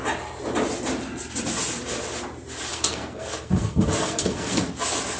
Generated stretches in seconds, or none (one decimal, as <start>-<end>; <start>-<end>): 2.7-4.7